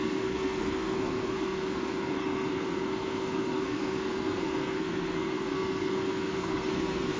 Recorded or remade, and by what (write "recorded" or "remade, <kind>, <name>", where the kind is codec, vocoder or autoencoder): remade, codec, SNAC